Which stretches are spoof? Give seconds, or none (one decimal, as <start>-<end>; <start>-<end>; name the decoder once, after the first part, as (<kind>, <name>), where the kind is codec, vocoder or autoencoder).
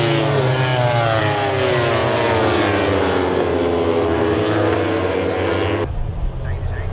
none